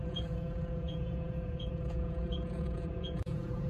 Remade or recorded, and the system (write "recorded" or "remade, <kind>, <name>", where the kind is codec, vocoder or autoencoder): remade, vocoder, Vocos